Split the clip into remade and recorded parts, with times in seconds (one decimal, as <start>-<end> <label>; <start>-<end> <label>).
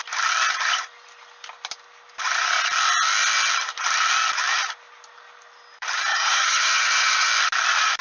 0.0-6.1 recorded; 6.1-7.3 remade; 7.3-8.0 recorded